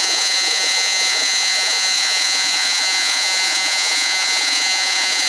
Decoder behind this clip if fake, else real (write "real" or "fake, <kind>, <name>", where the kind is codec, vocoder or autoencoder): fake, vocoder, Vocos